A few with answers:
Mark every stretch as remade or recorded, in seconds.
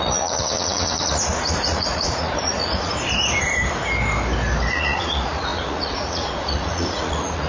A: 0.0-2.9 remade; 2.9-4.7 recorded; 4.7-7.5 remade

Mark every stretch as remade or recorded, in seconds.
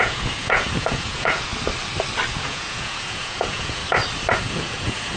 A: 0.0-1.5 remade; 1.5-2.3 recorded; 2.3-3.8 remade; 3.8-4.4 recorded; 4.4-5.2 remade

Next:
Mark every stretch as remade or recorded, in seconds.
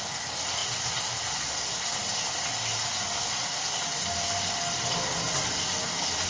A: 0.0-6.3 recorded